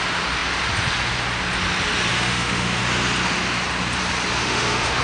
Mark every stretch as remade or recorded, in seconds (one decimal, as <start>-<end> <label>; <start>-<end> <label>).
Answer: 0.0-2.1 recorded; 2.1-2.8 remade; 2.8-4.4 recorded; 4.4-5.0 remade